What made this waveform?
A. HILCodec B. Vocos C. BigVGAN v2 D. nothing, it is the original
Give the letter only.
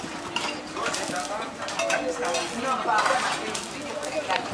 D